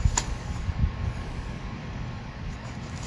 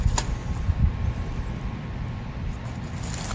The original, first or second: second